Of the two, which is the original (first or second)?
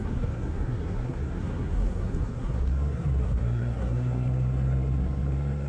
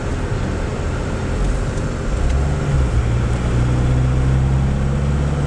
second